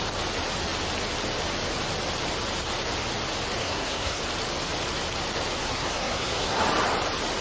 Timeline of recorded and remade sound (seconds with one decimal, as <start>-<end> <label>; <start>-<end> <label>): 0.0-3.6 recorded; 3.6-4.2 remade; 4.2-5.6 recorded; 5.6-6.6 remade; 6.6-7.4 recorded